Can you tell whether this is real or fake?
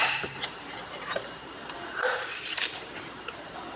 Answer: fake